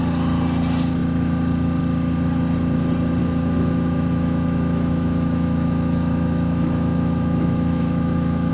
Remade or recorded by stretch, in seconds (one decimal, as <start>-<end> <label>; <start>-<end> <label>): 0.0-3.2 recorded; 3.2-8.5 remade